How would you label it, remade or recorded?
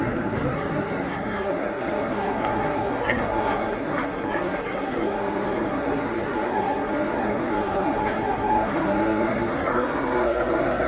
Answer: remade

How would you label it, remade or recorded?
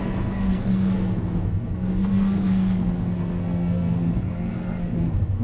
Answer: remade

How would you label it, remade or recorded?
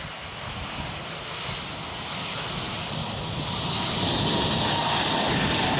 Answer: recorded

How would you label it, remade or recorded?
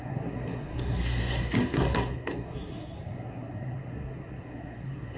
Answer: remade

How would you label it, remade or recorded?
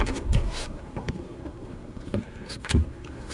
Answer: remade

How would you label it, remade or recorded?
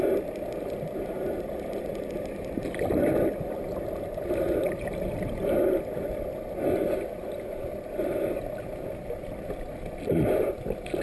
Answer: recorded